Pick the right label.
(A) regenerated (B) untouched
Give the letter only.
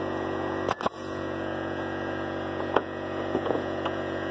A